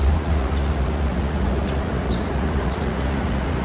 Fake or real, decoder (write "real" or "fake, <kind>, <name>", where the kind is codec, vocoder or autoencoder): fake, vocoder, Vocos